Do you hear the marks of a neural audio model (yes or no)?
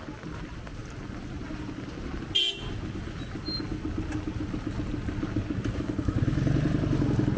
no